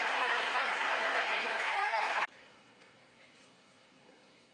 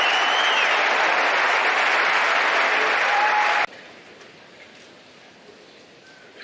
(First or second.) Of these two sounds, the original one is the second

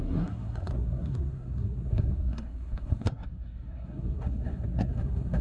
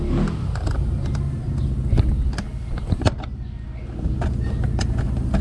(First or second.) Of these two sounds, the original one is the second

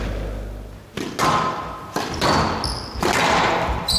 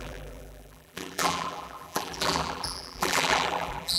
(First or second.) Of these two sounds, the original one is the first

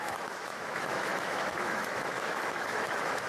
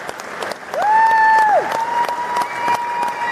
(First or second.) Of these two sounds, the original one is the second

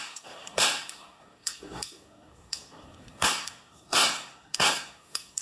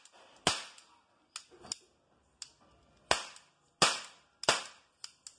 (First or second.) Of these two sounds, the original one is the second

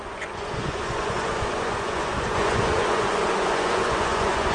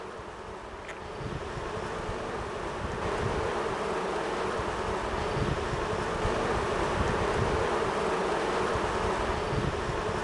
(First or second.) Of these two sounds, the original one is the second